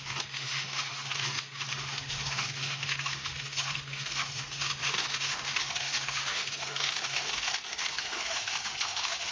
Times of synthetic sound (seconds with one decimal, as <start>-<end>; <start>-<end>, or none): 0.0-9.3